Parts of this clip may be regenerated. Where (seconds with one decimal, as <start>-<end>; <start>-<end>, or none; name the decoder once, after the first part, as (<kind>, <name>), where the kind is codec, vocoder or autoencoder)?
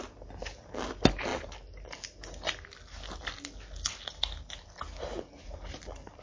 none